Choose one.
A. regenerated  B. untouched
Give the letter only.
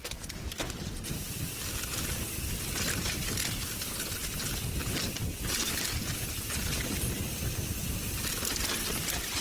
B